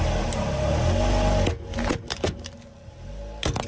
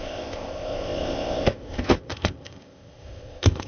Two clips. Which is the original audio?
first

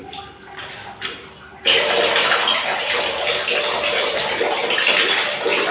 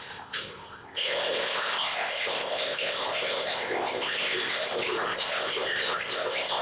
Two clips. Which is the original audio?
first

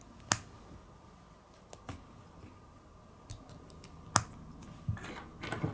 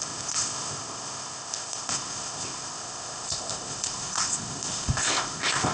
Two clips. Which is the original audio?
first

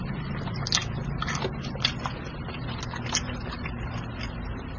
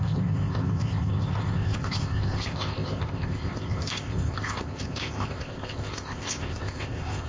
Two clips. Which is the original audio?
first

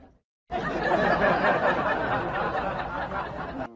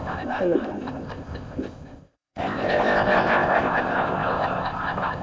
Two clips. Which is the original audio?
first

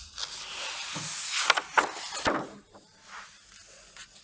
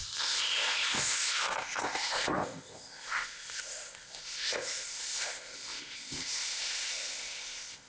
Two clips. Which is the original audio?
first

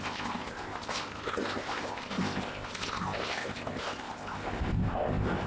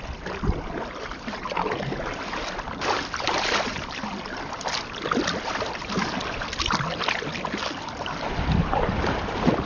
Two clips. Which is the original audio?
second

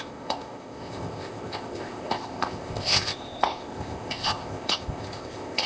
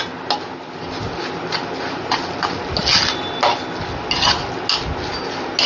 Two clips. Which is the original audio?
second